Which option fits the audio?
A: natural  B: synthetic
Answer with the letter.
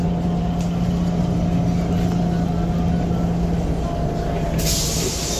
A